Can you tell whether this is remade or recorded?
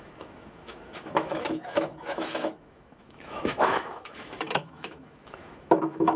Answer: remade